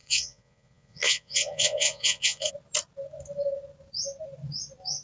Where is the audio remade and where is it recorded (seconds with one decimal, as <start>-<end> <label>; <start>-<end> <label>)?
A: 0.0-2.5 remade; 2.5-5.0 recorded